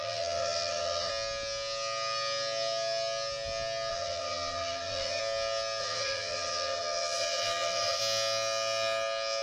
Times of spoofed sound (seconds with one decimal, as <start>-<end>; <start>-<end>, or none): 0.0-1.1; 3.9-5.2; 5.8-8.0